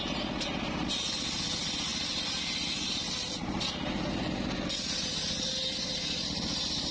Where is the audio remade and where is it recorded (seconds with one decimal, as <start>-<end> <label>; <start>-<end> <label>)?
0.0-6.9 recorded